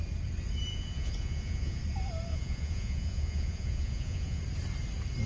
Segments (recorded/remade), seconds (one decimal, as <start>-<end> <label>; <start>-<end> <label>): 0.0-0.7 recorded; 0.7-1.8 remade; 1.8-2.3 recorded; 2.3-4.4 remade; 4.4-5.3 recorded